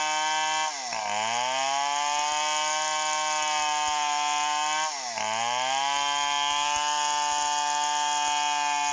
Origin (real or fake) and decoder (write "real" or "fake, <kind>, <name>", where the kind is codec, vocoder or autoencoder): real